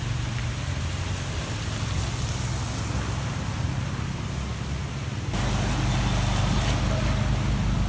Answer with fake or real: real